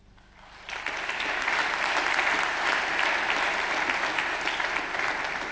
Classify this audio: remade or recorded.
recorded